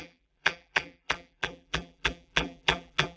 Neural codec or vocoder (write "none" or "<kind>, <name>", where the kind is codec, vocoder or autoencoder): vocoder, BigVGAN v2